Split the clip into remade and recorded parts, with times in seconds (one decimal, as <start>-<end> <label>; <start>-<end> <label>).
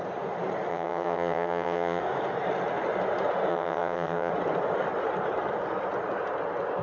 0.0-0.7 recorded; 0.7-2.0 remade; 2.0-3.5 recorded; 3.5-4.3 remade; 4.3-6.8 recorded